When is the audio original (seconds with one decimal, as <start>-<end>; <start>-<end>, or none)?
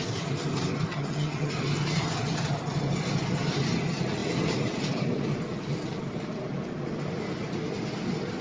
0.0-0.9; 1.5-8.4